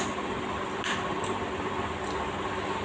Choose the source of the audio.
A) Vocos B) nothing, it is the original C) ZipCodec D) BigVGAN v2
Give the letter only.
B